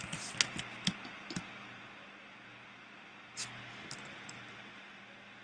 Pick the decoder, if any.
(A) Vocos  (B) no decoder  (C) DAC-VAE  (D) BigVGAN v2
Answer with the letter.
B